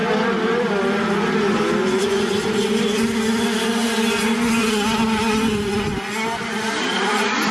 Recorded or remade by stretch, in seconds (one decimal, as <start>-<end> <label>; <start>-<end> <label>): 0.0-1.8 recorded; 1.8-2.3 remade; 2.3-7.5 recorded